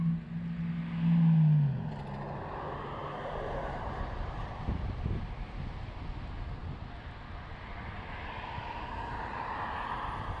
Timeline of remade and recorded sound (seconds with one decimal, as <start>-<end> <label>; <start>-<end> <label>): 0.0-3.0 recorded; 3.0-5.6 remade; 5.6-6.6 recorded; 6.6-7.1 remade; 7.1-10.4 recorded